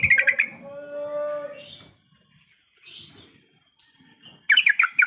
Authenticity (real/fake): real